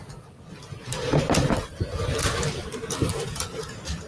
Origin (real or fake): real